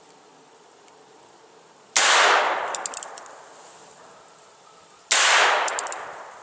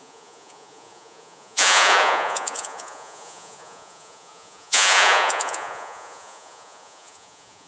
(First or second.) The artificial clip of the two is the second